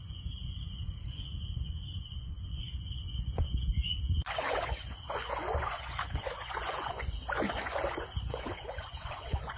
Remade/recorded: remade